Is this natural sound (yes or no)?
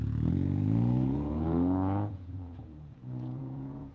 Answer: no